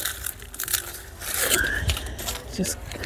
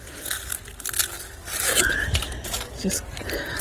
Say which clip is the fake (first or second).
first